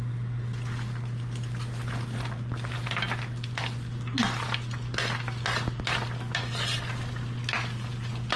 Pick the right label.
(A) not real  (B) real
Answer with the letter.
B